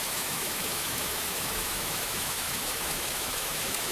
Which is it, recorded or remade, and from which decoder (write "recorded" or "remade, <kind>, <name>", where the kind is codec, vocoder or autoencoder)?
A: remade, autoencoder, DAC-VAE